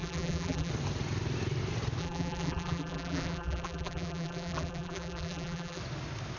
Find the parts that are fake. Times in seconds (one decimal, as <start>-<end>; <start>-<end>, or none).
0.0-0.7; 2.0-5.8